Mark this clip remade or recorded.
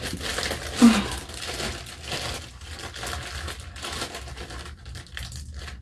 recorded